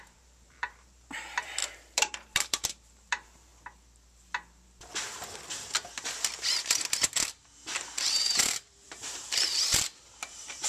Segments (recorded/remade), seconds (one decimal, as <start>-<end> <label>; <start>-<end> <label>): 0.0-3.5 remade; 3.5-8.1 recorded; 8.1-10.7 remade